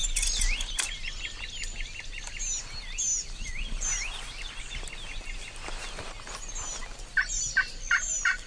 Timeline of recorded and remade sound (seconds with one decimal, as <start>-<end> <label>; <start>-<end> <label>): 0.0-8.5 recorded